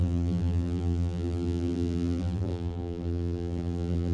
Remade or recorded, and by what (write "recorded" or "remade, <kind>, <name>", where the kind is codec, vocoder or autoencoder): remade, vocoder, BigVGAN v2